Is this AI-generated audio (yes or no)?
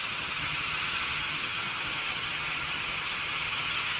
yes